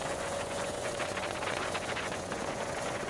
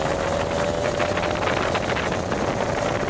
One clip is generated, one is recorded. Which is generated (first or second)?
first